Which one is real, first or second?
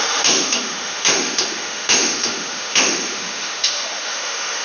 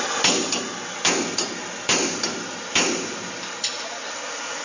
second